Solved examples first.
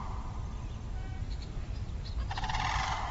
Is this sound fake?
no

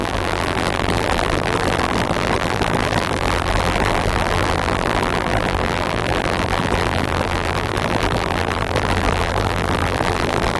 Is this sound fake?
yes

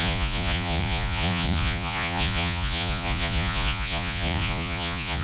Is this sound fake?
yes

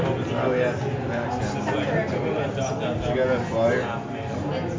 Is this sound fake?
no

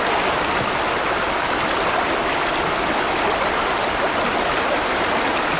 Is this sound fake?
no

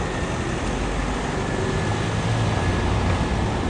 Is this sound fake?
no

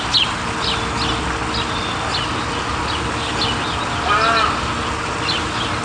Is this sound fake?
no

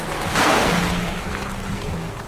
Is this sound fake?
yes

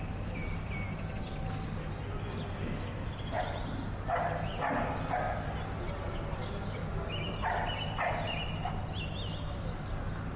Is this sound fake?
no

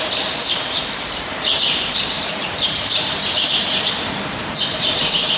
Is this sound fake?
yes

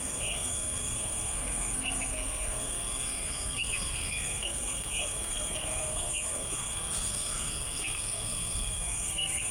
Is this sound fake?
yes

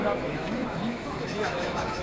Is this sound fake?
yes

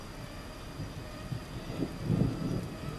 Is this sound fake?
no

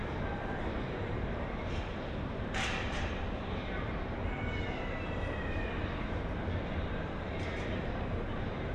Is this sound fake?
yes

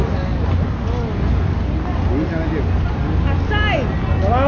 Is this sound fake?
no